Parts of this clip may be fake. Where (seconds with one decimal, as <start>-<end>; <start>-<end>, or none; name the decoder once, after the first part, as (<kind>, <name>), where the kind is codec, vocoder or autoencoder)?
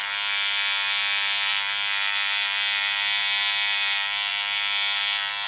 none